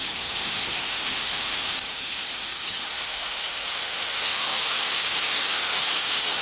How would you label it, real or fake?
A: fake